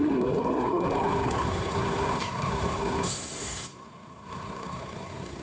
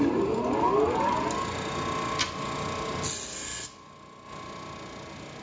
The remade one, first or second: first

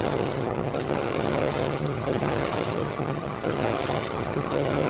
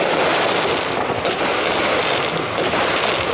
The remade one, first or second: first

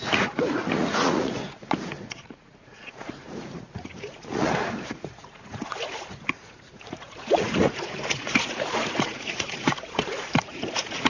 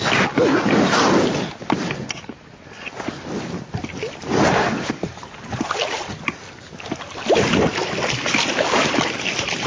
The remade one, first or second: first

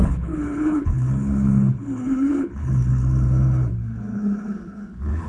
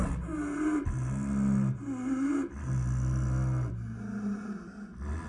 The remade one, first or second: first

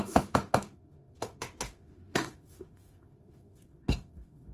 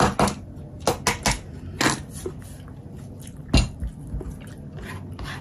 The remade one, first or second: first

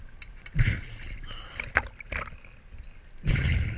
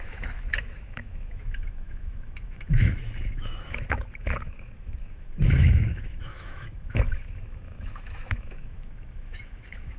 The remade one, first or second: second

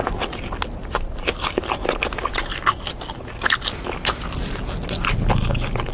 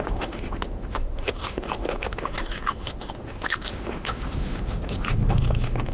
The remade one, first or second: second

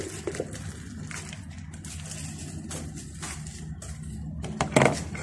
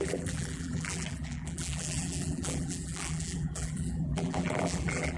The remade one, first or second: second